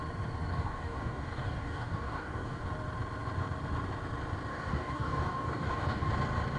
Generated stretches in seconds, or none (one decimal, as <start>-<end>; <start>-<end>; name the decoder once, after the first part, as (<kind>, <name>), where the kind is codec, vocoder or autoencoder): 0.5-2.6 (codec, DAC); 4.5-6.1